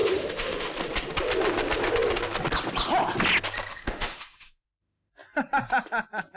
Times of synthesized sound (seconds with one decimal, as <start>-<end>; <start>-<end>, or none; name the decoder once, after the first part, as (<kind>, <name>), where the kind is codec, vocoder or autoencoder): 0.0-0.7 (autoencoder, DAC-VAE); 3.7-5.1